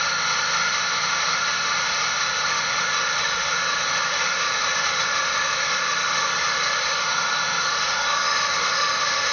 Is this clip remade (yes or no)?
yes